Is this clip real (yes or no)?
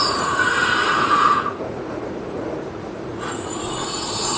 no